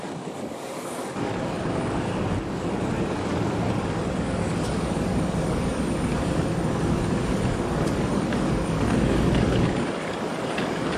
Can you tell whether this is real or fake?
fake